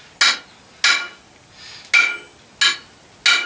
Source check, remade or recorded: recorded